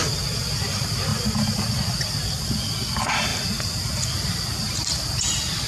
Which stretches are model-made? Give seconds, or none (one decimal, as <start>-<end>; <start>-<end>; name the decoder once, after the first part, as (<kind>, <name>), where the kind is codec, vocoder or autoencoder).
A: 1.1-2.6 (vocoder, BigVGAN v2); 3.3-5.7